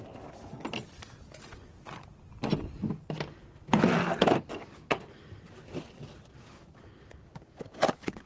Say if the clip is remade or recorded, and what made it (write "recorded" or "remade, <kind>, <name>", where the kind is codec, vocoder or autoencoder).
recorded